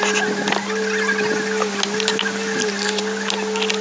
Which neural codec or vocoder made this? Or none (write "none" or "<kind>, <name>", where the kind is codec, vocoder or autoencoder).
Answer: none